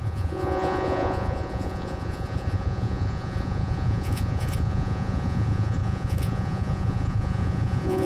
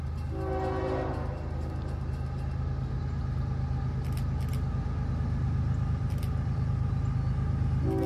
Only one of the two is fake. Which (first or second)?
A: first